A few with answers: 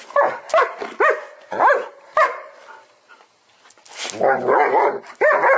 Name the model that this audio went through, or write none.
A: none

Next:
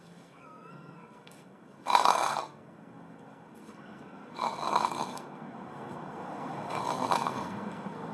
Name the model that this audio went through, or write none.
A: codec, SNAC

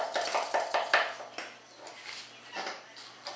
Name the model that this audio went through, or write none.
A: none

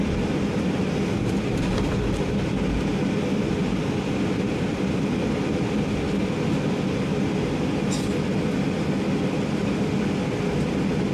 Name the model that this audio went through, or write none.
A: none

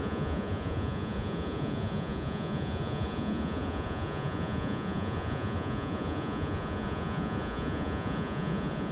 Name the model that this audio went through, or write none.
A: vocoder, Vocos